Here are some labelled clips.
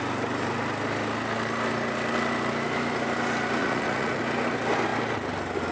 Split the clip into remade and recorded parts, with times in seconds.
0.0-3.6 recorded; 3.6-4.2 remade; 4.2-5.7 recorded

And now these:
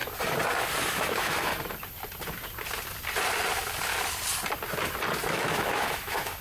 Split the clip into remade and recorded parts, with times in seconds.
0.0-0.8 recorded; 0.8-1.5 remade; 1.5-5.3 recorded; 5.3-6.4 remade

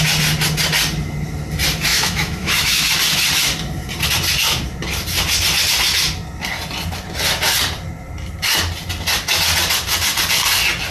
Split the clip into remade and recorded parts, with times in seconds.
0.0-1.9 recorded; 1.9-2.9 remade; 2.9-10.9 recorded

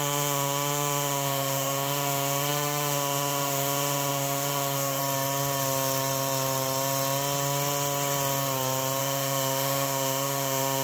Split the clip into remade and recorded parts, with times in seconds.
0.0-5.0 remade; 5.0-9.0 recorded; 9.0-10.8 remade